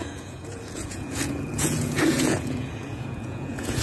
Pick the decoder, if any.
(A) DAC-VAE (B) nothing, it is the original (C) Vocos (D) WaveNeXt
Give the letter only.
C